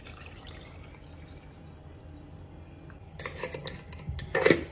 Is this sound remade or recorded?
recorded